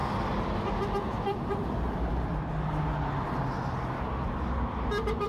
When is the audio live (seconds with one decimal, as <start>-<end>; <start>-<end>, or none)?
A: 0.0-5.3